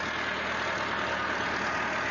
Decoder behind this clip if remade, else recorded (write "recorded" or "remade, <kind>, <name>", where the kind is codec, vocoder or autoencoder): recorded